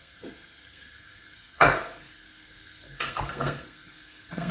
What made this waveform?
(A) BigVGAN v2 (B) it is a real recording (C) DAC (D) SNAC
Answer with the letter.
D